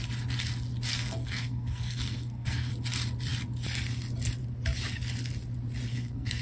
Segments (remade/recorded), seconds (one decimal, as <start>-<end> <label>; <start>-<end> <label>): 0.0-0.9 recorded; 0.9-2.7 remade; 2.7-5.9 recorded; 5.9-6.4 remade